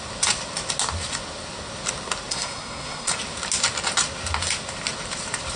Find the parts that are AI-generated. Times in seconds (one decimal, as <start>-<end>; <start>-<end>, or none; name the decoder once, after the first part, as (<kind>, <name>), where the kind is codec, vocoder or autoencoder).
2.3-3.1 (codec, SNAC)